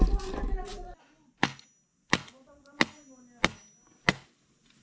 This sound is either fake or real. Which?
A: real